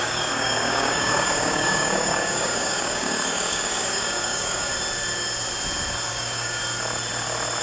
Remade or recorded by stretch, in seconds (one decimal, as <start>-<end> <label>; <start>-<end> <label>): 0.0-4.7 remade; 4.7-6.1 recorded; 6.1-6.6 remade; 6.6-7.6 recorded